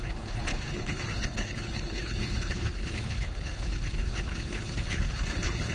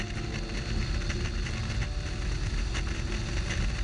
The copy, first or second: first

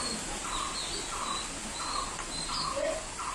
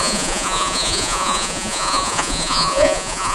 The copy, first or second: second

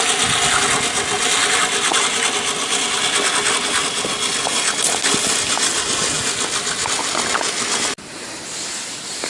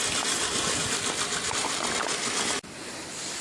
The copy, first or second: second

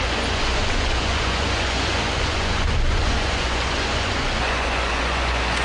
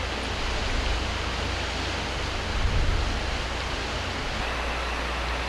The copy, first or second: first